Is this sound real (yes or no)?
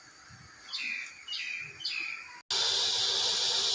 yes